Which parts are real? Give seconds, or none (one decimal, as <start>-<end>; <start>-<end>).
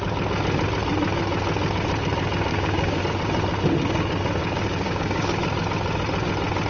0.0-2.5; 3.0-4.4; 5.2-6.7